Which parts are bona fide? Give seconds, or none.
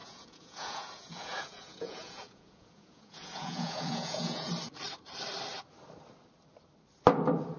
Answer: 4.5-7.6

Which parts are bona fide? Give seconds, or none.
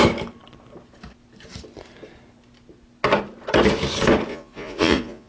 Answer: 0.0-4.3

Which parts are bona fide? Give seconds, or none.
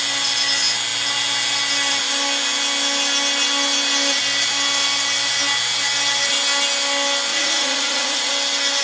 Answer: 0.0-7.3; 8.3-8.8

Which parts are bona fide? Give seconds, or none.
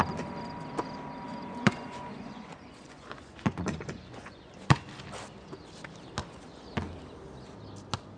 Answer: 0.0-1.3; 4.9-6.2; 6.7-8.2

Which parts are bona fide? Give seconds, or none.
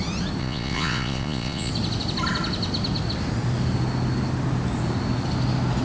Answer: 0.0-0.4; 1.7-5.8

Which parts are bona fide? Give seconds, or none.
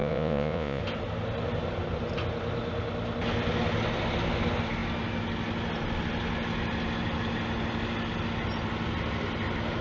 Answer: 0.8-9.8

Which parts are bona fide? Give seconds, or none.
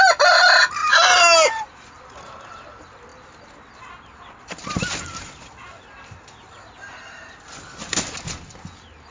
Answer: 0.0-9.1